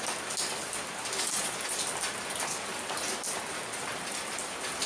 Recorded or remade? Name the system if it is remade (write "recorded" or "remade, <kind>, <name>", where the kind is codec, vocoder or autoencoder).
recorded